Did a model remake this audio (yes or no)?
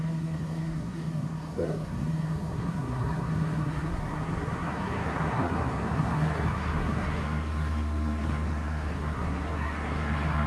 yes